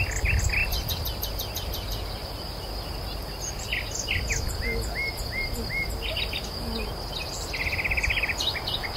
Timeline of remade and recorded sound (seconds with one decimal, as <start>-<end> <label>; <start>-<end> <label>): 0.0-9.0 recorded